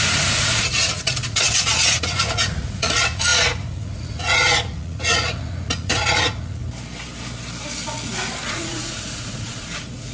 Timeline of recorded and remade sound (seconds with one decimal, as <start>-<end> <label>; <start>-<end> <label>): 0.0-6.6 remade; 6.6-8.5 recorded; 8.5-10.1 remade